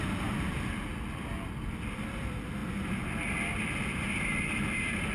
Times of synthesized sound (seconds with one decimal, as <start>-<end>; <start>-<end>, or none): none